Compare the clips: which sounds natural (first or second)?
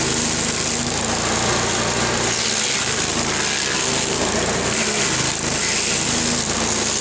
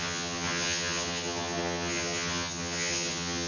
first